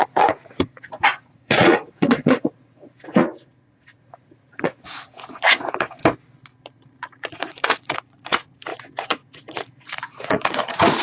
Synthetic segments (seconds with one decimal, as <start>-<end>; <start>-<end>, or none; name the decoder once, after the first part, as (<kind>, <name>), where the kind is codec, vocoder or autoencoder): 0.0-6.0 (vocoder, Vocos); 6.7-11.0

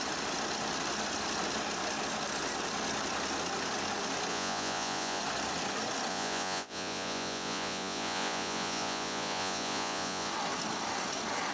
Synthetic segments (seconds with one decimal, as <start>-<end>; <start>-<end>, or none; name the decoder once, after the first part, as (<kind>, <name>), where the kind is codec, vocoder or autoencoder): 4.3-5.2 (vocoder, Vocos); 6.1-10.3

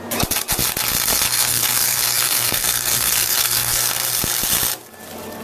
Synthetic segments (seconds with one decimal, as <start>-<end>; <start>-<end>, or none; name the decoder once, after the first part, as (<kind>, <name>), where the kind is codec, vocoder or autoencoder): 1.1-3.9 (codec, SNAC)

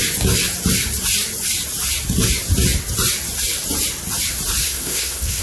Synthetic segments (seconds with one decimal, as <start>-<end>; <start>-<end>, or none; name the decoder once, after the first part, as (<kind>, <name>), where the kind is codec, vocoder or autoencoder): 4.6-5.4 (codec, SNAC)

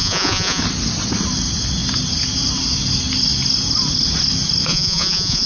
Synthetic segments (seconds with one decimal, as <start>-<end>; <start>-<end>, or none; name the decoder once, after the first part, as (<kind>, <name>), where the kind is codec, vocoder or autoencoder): 0.0-0.6 (vocoder, Vocos); 4.7-5.5